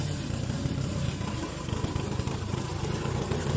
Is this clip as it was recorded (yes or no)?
yes